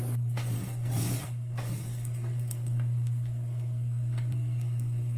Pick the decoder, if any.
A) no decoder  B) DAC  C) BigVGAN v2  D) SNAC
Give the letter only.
D